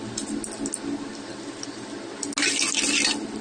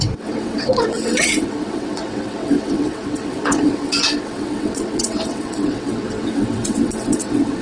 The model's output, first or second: second